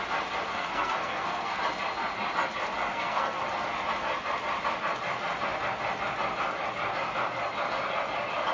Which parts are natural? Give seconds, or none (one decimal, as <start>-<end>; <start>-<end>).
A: 0.0-0.5; 1.6-2.9; 3.4-8.5